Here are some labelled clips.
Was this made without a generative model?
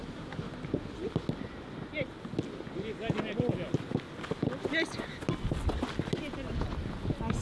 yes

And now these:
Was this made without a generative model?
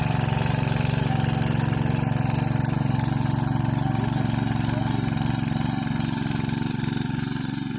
yes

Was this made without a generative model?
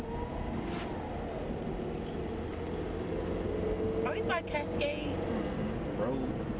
yes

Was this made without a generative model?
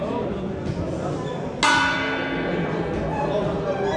yes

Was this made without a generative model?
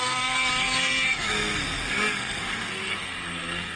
no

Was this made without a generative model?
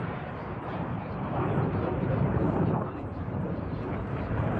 no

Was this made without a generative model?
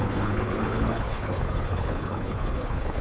no